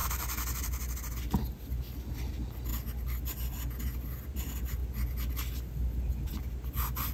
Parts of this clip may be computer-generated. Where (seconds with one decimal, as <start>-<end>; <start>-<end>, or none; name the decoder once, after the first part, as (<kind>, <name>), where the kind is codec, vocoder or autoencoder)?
none